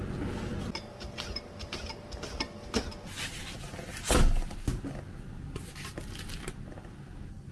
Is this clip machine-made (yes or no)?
no